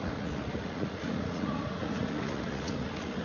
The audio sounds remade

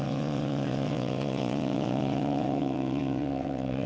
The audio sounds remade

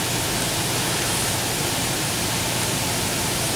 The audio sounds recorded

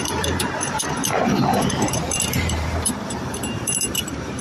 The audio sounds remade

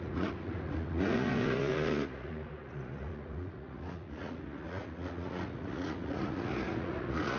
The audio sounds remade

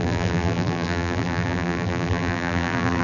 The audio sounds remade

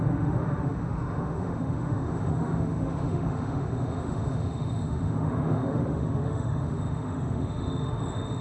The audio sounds remade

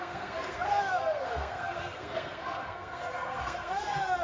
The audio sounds remade